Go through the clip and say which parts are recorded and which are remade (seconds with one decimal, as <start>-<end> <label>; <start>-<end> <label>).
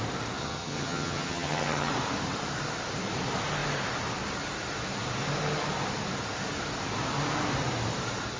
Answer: 0.0-0.4 recorded; 0.4-1.9 remade; 1.9-8.4 recorded